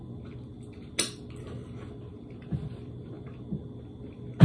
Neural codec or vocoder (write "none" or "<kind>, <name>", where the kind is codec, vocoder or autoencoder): none